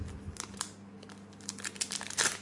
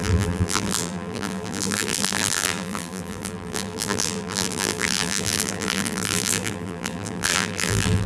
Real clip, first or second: first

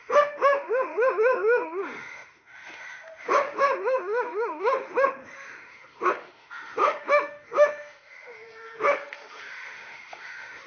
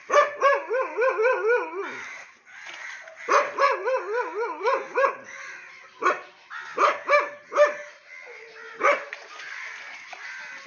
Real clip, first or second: second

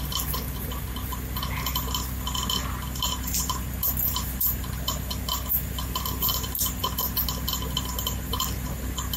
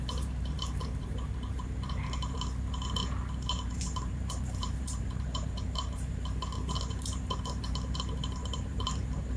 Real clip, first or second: first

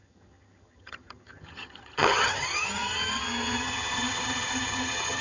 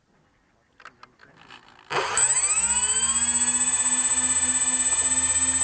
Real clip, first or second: second